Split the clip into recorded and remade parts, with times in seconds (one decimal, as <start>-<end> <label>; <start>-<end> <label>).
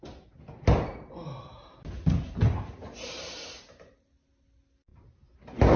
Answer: 0.0-5.8 recorded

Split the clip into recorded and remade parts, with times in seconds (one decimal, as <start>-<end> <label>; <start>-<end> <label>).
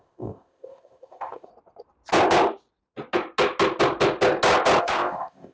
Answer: 0.0-1.5 remade; 1.5-4.8 recorded; 4.8-5.5 remade